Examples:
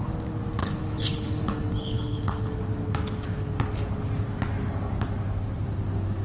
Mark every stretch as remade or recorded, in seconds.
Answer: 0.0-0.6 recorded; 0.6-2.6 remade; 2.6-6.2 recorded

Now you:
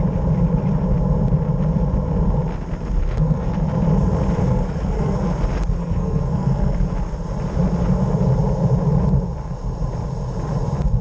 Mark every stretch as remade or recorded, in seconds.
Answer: 0.0-3.0 recorded; 3.0-3.7 remade; 3.7-4.4 recorded; 4.4-5.3 remade; 5.3-5.8 recorded; 5.8-6.9 remade; 6.9-11.0 recorded

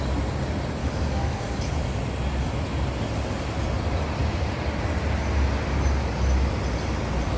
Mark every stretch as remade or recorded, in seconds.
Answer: 0.0-0.8 recorded; 0.8-1.6 remade; 1.6-7.4 recorded